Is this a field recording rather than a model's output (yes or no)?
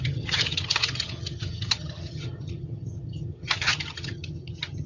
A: no